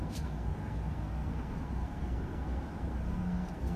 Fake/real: fake